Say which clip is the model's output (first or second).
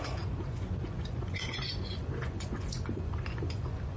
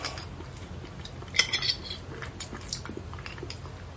first